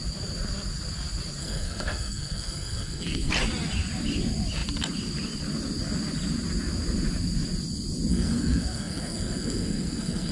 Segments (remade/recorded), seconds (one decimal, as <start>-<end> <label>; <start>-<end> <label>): 0.0-1.4 recorded; 1.4-3.3 remade; 3.3-8.1 recorded; 8.1-10.3 remade